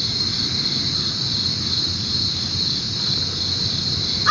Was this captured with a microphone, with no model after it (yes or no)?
yes